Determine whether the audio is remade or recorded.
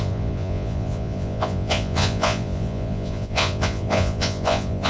remade